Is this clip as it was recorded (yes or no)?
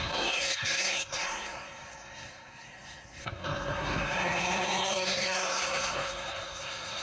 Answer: no